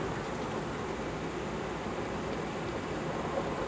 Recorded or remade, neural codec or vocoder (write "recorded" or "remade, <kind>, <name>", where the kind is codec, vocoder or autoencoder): recorded